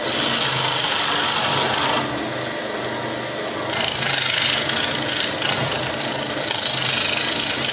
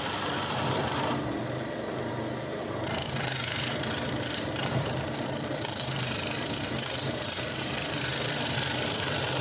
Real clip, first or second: first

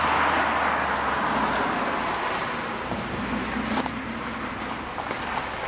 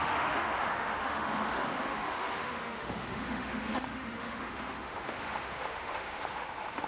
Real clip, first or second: first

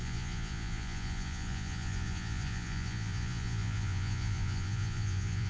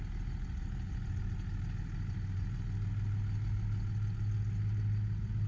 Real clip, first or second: second